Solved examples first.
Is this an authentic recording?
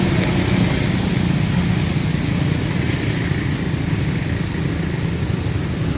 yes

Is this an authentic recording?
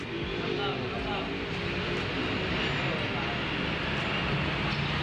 yes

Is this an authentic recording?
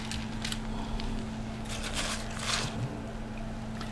yes